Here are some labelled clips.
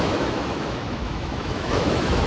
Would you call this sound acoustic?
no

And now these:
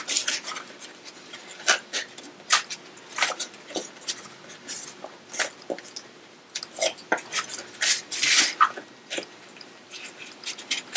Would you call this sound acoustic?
yes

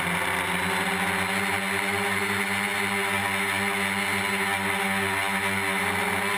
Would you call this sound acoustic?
yes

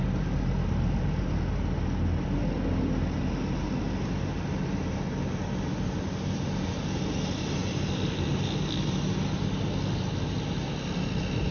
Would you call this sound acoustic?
yes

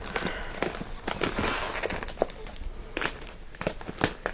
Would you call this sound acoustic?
yes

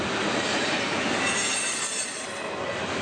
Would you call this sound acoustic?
yes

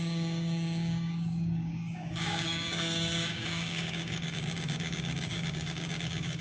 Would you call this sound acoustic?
no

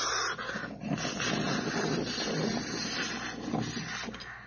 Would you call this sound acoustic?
yes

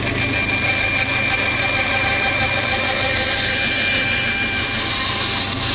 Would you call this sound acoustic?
yes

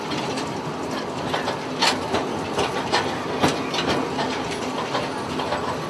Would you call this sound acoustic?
yes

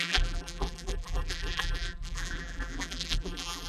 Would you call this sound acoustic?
no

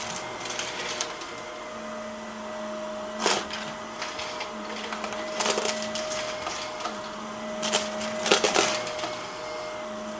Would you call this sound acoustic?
yes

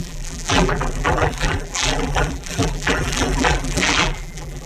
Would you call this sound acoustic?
no